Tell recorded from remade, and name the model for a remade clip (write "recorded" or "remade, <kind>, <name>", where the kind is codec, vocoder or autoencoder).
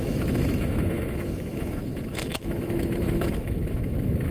remade, autoencoder, DAC-VAE